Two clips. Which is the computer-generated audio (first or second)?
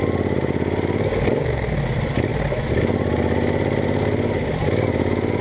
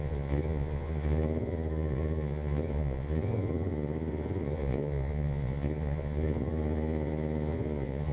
second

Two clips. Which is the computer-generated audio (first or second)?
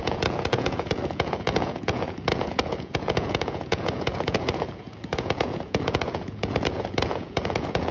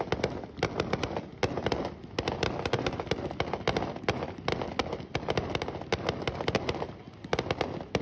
first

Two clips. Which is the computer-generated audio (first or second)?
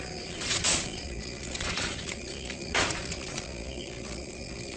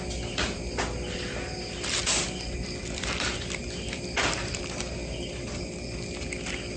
first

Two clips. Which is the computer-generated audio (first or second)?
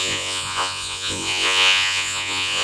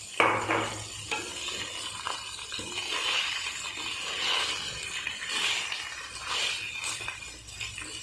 first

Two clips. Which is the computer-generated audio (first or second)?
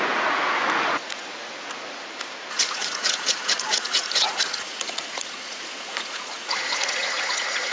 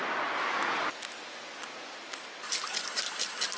first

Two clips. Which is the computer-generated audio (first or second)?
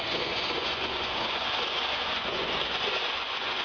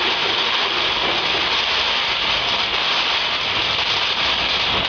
first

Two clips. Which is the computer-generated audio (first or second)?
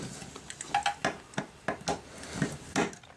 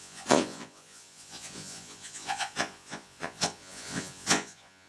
second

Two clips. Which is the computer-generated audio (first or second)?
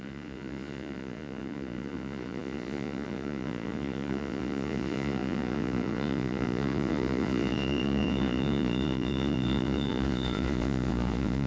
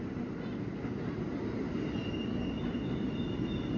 first